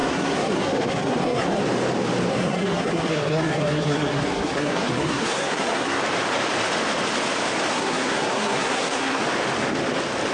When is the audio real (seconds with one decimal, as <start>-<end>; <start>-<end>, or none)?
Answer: 1.6-2.3; 6.0-7.7; 9.2-10.3